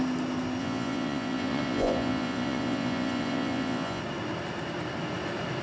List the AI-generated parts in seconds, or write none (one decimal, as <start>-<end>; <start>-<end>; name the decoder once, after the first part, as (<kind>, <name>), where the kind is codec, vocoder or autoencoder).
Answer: 0.6-4.0 (vocoder, Vocos)